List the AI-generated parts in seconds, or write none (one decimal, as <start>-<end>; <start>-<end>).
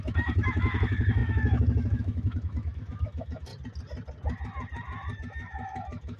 0.0-3.5; 5.2-6.2